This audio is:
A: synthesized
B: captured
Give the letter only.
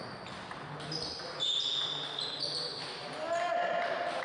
B